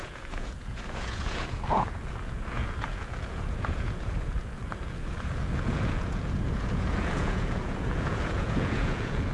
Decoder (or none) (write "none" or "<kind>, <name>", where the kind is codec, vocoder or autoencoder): vocoder, Vocos